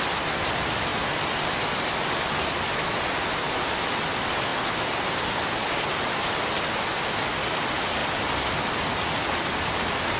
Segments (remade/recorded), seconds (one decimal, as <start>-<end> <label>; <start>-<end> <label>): 0.0-10.2 recorded